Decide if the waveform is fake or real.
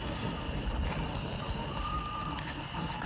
real